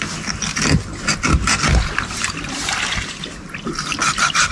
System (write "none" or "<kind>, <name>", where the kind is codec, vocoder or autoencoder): none